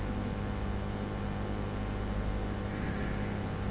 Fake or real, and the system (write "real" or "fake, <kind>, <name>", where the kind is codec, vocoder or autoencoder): real